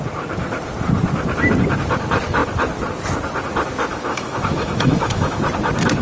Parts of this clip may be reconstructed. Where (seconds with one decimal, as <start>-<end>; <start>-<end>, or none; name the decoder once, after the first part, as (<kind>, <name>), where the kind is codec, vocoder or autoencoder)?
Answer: 3.9-5.4 (autoencoder, DAC-VAE)